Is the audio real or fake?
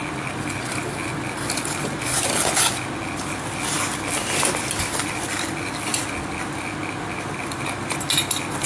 real